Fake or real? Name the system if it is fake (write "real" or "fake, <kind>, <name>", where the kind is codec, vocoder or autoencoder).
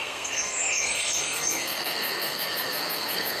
fake, codec, SNAC